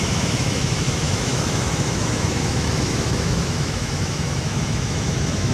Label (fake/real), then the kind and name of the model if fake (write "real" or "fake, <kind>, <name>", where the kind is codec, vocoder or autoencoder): fake, autoencoder, DAC-VAE